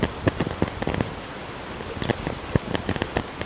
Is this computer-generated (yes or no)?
no